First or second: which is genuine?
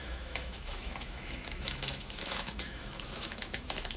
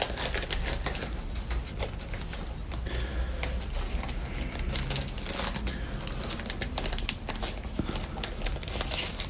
second